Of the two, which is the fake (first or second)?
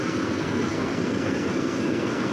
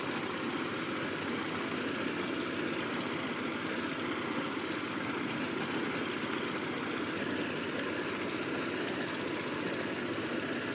first